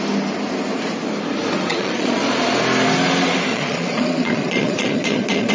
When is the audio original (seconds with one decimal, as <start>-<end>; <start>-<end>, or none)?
0.0-1.7; 2.2-3.5

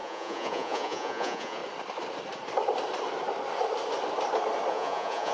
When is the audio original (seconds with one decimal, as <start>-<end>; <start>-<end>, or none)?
1.6-4.7

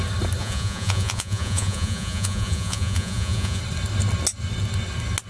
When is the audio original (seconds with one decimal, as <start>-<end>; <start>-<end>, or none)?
0.0-0.4; 3.6-5.3

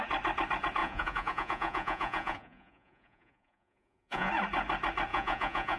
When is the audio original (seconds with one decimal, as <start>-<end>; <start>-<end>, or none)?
0.0-0.8; 4.3-5.1

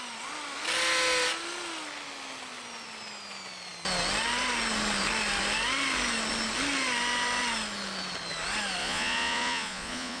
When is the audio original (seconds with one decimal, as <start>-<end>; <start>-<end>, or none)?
0.0-8.8

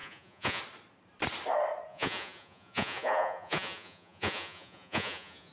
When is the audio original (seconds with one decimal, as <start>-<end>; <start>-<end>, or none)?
0.6-1.9

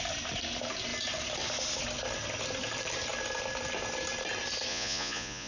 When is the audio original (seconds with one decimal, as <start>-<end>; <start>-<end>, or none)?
0.0-4.7

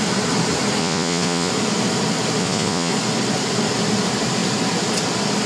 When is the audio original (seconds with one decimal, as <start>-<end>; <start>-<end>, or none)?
0.0-0.8; 1.5-2.4; 2.9-5.5